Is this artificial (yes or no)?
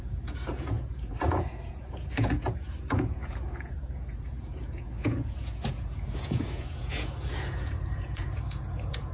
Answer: yes